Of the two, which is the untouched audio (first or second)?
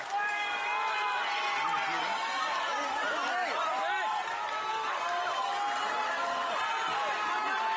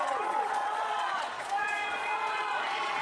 first